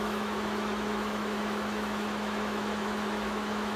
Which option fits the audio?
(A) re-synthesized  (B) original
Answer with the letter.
A